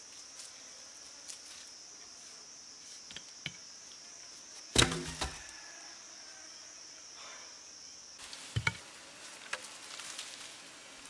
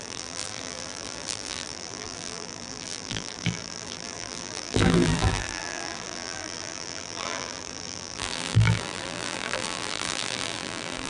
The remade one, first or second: second